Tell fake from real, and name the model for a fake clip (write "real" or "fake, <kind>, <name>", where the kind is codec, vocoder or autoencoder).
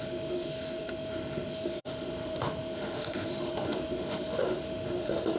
fake, autoencoder, DAC-VAE